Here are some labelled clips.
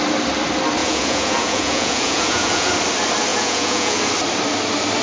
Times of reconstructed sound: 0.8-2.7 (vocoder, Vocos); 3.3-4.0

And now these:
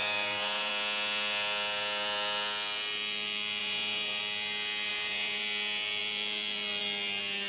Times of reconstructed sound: 0.0-0.7 (vocoder, Vocos); 3.6-4.2; 4.9-5.4

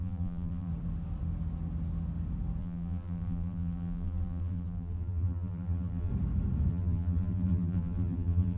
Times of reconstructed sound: 0.0-0.7 (vocoder, BigVGAN v2); 2.6-6.1; 6.7-8.6